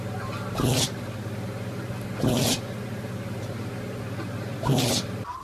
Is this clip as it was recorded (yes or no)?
yes